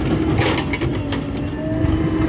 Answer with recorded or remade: recorded